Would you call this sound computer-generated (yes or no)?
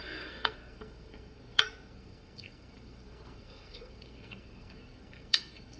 yes